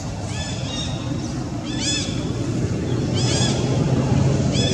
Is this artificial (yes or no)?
no